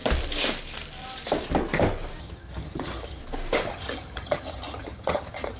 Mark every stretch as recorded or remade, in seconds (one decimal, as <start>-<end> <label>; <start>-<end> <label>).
0.0-2.2 recorded; 2.2-3.2 remade; 3.2-3.7 recorded; 3.7-5.6 remade